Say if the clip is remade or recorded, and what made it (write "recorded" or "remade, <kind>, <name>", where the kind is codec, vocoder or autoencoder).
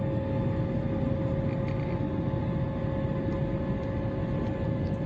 recorded